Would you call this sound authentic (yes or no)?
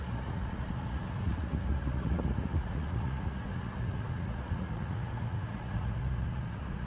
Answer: no